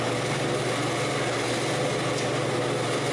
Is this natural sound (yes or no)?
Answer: yes